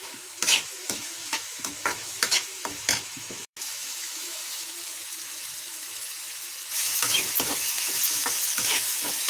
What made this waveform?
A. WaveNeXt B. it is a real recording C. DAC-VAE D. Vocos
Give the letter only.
C